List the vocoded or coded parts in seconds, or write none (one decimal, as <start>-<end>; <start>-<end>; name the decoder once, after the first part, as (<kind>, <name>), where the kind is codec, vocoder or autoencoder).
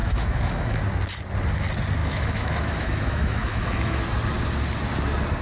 0.0-0.8 (autoencoder, DAC-VAE); 2.0-4.0